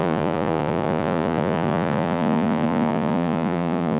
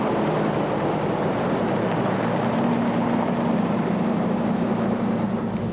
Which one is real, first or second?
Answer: second